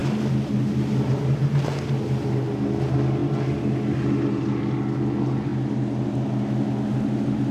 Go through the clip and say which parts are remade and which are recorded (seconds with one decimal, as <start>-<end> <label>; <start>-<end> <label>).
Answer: 0.0-7.5 recorded